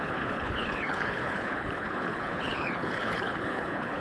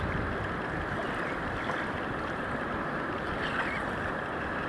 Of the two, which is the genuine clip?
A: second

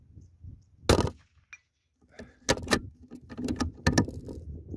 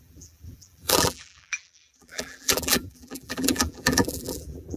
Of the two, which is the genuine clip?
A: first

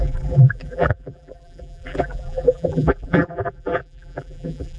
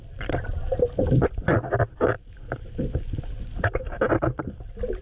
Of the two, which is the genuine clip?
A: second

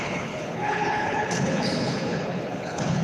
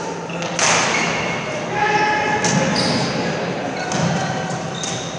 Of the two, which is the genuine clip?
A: second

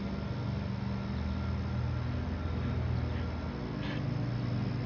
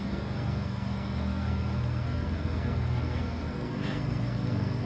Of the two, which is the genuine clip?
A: first